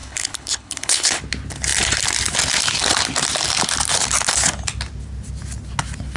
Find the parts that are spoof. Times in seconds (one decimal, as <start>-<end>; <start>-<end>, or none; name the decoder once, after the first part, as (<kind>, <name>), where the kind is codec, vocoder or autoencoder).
0.0-1.2 (codec, HILCodec)